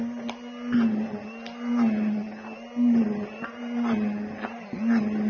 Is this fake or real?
real